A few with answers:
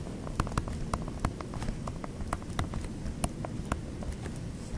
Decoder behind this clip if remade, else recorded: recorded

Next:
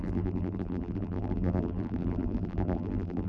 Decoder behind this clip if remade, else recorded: remade, vocoder, BigVGAN v2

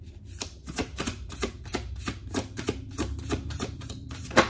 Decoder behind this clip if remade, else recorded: remade, vocoder, BigVGAN v2